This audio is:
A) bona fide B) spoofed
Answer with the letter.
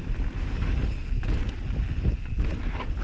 A